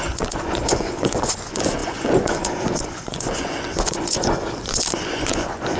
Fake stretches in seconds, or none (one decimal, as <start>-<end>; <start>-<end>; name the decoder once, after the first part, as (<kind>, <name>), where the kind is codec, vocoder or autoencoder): 0.0-5.8 (vocoder, Vocos)